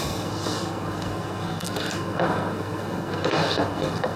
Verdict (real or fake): fake